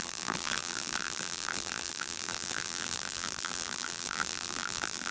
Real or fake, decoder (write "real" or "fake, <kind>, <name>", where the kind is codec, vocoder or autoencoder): fake, vocoder, BigVGAN v2